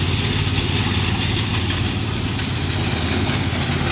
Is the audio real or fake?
real